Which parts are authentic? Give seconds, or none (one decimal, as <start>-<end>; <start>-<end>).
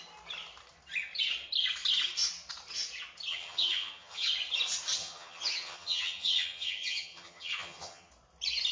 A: 0.0-3.3; 4.3-5.0; 8.1-8.7